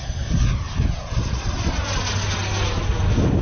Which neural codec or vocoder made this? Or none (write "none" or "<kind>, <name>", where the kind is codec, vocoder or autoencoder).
none